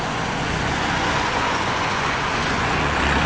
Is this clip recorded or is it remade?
remade